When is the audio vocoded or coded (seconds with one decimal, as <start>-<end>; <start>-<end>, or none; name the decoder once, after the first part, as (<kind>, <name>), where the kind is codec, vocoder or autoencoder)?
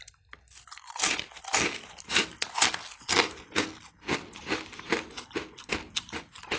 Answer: none